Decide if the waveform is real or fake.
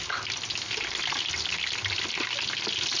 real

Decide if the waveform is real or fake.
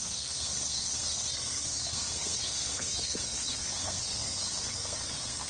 fake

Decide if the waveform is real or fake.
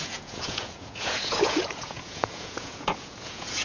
fake